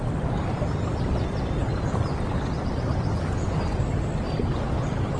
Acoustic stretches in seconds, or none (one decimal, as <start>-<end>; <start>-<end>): 0.0-5.2

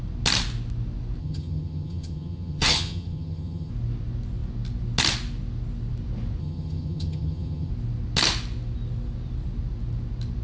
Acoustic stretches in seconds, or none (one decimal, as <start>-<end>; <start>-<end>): 0.0-1.2; 3.7-6.4; 7.7-10.4

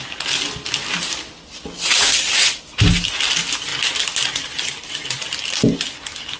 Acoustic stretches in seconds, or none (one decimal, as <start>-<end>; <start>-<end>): 0.0-6.4

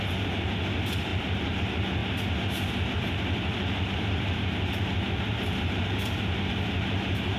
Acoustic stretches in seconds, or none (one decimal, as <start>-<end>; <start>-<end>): 0.0-1.1; 1.6-2.0; 6.4-7.4

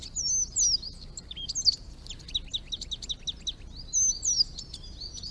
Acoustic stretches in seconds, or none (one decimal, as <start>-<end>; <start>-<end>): 0.0-5.3

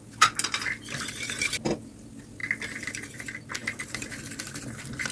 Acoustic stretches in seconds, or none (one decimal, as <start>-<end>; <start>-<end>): 0.0-3.6; 4.3-5.1

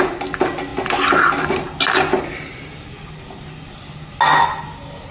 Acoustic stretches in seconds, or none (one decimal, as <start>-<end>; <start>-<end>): 0.0-5.1